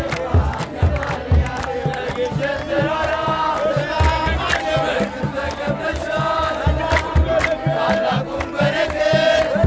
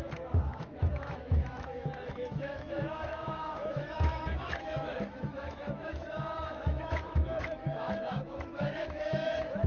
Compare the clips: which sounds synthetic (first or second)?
second